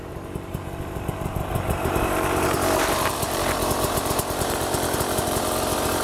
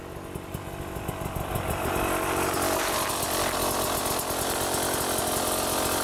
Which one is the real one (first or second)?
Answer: second